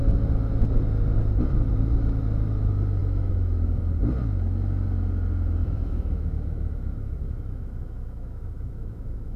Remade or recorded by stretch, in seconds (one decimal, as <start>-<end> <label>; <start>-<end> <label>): 0.0-3.0 recorded; 3.0-3.8 remade; 3.8-5.6 recorded; 5.6-9.4 remade